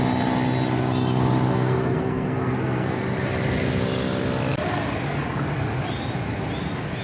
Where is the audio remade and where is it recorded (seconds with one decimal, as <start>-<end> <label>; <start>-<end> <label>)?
0.0-1.5 recorded; 1.5-3.0 remade; 3.0-7.0 recorded